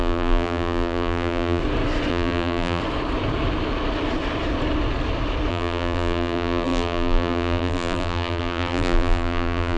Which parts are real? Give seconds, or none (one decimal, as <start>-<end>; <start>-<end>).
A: 1.6-2.1; 2.8-5.5